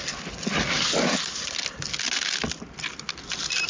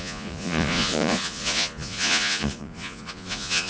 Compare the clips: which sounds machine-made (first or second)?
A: second